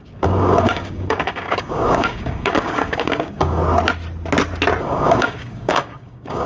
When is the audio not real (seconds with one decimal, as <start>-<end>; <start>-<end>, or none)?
0.0-3.6; 4.8-6.5

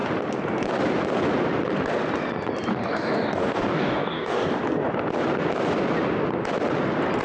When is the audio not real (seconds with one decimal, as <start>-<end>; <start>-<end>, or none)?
2.7-4.6